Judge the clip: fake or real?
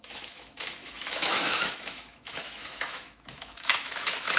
fake